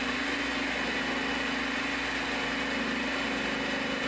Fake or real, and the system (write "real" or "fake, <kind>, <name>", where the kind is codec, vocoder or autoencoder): real